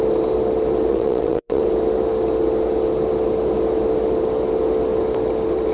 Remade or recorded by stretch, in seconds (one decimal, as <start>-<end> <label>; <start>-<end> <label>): 0.0-0.9 recorded; 0.9-1.6 remade; 1.6-5.7 recorded